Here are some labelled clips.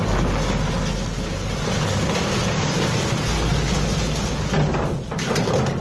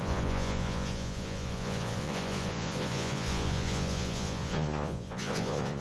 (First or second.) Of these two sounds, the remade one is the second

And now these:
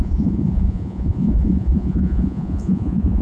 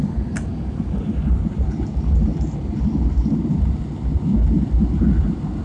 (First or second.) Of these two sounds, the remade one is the first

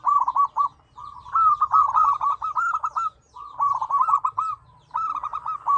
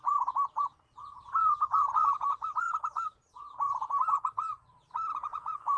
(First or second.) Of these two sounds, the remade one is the second